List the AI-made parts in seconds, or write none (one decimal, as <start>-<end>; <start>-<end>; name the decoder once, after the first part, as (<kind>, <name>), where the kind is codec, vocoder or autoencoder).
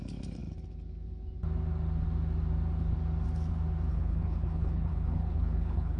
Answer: 3.9-6.0 (codec, HILCodec)